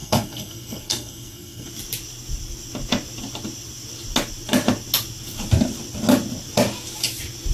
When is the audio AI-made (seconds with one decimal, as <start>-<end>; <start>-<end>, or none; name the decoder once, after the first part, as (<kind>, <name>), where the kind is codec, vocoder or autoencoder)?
0.0-1.7 (codec, SNAC)